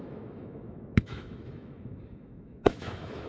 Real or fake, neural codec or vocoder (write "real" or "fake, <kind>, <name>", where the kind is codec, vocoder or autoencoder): fake, autoencoder, DAC-VAE